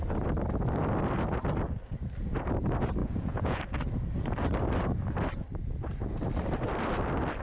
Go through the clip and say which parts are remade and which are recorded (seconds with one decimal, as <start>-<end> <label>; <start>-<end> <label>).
0.0-3.0 recorded; 3.0-3.6 remade; 3.6-7.4 recorded